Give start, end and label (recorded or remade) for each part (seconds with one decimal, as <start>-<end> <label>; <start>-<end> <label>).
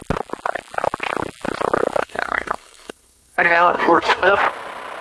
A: 0.0-2.0 recorded; 2.0-4.4 remade; 4.4-5.0 recorded